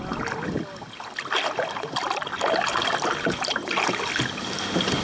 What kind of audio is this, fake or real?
real